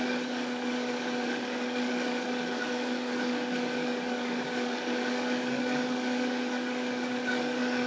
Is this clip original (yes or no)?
no